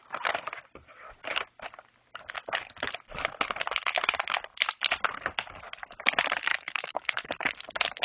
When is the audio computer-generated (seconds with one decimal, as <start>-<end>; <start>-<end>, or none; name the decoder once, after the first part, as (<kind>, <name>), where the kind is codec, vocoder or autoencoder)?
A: 6.5-7.3 (autoencoder, DAC-VAE)